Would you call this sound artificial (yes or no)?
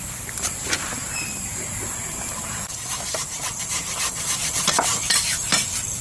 yes